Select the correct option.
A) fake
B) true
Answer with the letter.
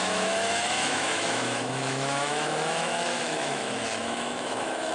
A